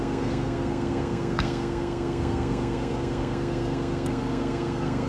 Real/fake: fake